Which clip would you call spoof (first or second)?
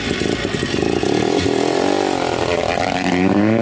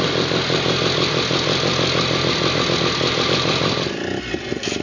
first